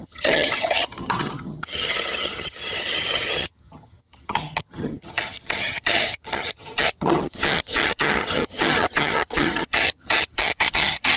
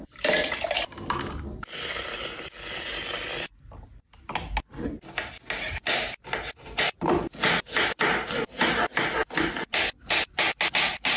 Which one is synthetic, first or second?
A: first